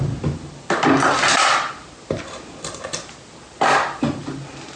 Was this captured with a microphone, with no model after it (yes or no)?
yes